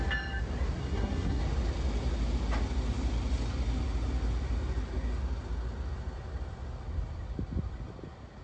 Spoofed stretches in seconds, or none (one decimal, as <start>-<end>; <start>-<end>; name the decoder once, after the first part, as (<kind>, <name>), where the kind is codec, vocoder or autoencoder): 0.8-1.4 (codec, SNAC)